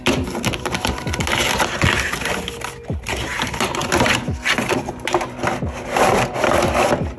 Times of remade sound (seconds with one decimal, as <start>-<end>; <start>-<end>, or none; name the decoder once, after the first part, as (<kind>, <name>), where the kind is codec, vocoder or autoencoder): none